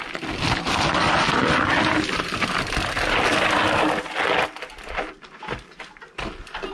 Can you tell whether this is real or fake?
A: real